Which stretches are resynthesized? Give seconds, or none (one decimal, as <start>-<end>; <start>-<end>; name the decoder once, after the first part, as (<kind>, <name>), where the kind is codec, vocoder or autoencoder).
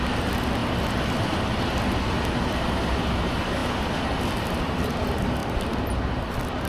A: 3.6-4.6 (vocoder, BigVGAN v2)